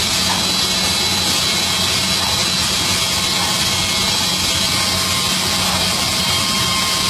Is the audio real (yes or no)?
yes